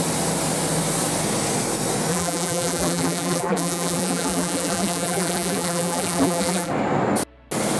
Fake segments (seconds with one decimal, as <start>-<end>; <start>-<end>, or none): 2.1-6.7

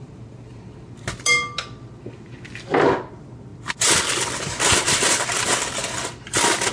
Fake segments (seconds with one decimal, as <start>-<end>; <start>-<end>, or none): none

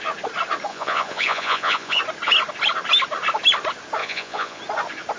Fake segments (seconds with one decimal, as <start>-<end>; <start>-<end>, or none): 0.7-2.0; 4.0-4.6

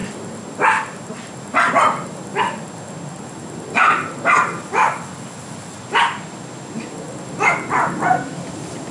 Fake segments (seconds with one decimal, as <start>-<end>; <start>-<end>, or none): none

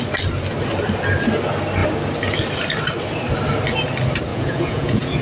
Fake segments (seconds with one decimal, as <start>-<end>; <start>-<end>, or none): 4.3-5.2